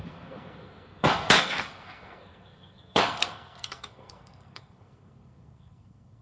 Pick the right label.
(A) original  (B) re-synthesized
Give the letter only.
B